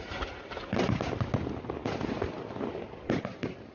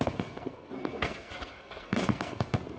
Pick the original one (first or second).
first